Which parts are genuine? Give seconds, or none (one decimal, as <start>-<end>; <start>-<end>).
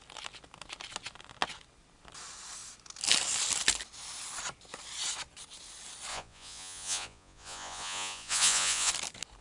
0.0-6.1; 8.9-9.4